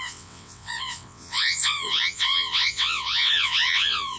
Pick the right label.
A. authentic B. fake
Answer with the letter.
B